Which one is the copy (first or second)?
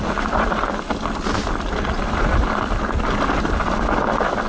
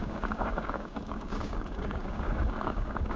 second